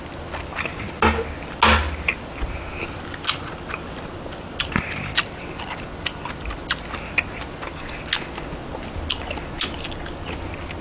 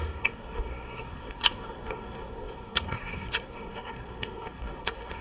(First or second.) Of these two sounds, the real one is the first